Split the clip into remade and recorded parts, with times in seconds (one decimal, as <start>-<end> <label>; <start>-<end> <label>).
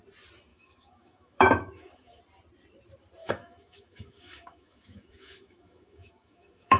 0.0-0.5 recorded; 0.5-2.2 remade; 2.2-3.2 recorded; 3.2-6.8 remade